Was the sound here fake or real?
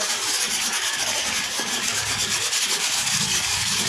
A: fake